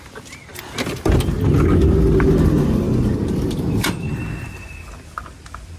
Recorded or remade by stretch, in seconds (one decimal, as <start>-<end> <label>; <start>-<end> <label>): 0.0-5.8 recorded